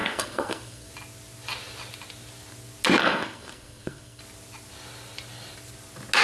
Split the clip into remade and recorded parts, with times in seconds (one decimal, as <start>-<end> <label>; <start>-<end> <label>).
0.0-0.9 remade; 0.9-3.0 recorded; 3.0-4.2 remade; 4.2-6.2 recorded